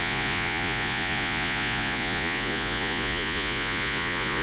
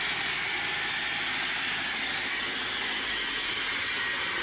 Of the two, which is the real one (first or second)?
second